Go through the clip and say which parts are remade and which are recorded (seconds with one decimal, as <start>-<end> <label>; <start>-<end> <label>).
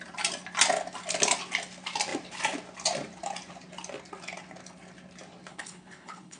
0.0-5.5 recorded; 5.5-6.4 remade